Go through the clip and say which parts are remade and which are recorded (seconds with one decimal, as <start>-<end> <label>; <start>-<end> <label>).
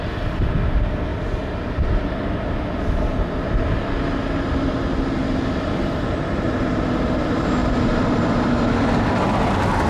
0.0-1.1 recorded; 1.1-2.8 remade; 2.8-7.6 recorded; 7.6-8.5 remade; 8.5-9.9 recorded